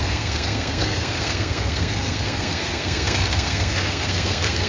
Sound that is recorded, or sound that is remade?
remade